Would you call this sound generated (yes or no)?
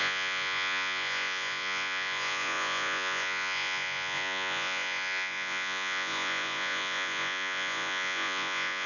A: yes